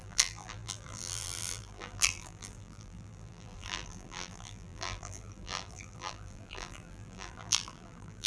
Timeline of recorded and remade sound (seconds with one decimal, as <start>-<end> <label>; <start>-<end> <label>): 0.0-8.3 remade